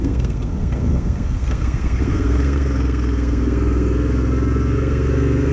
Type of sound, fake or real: fake